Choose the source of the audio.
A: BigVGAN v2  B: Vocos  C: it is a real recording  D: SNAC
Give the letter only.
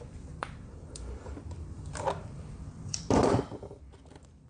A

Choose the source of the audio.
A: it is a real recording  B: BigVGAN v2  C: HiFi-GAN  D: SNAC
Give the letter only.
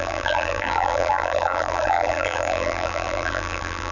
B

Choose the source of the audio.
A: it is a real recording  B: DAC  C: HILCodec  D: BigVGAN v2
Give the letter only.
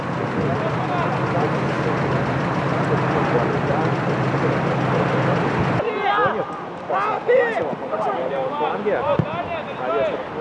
A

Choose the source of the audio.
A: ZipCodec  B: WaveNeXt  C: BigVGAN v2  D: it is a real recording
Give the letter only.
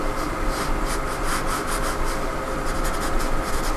D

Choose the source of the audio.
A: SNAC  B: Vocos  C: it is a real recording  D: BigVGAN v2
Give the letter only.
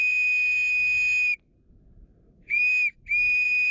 C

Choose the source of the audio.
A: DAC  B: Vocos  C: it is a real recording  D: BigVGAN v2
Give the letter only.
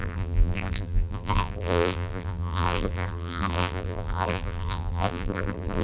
D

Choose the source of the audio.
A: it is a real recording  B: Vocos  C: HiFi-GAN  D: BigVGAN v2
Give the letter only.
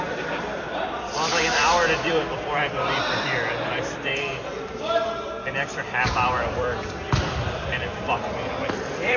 D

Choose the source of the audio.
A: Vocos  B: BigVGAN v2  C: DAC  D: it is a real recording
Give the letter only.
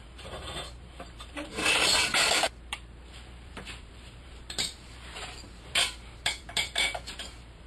B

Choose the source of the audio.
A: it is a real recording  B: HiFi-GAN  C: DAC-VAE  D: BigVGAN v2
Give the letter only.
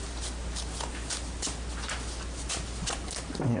A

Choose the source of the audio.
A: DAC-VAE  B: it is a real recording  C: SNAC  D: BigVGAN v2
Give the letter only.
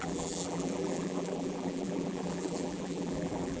D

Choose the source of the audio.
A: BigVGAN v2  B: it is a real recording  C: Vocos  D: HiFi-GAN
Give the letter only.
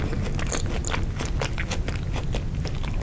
B